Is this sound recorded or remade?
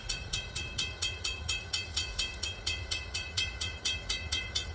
remade